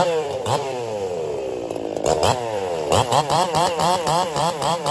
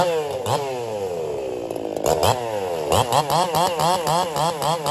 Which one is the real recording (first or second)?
second